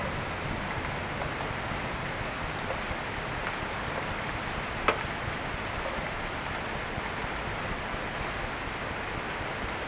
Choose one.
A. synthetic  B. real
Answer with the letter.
B